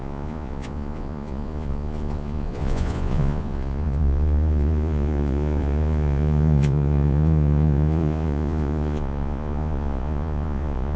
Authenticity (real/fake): fake